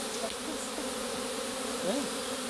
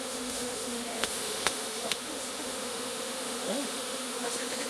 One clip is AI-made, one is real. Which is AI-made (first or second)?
second